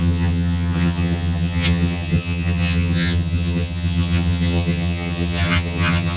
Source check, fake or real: fake